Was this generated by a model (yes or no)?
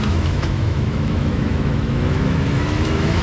yes